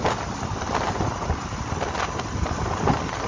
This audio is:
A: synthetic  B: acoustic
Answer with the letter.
B